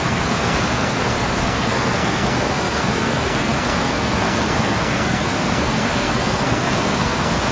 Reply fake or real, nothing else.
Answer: fake